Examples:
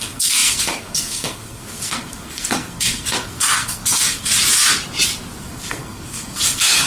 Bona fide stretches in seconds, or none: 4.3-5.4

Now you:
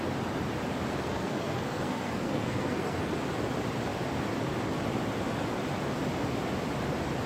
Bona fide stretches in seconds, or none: 0.0-0.9; 3.1-7.3

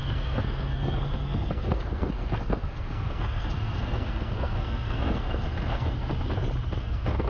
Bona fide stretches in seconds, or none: 6.1-6.8